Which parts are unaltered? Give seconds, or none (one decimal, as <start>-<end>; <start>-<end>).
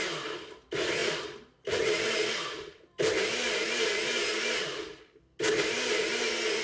0.0-6.6